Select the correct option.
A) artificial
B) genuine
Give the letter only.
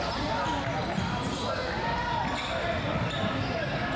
B